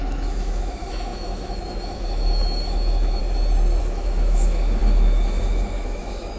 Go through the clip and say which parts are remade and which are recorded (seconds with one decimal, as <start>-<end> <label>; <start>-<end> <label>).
0.0-3.2 remade; 3.2-3.8 recorded; 3.8-6.4 remade